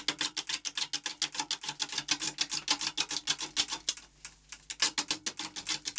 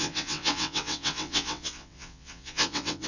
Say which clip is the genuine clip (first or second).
first